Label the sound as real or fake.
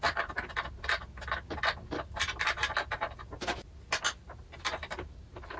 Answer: real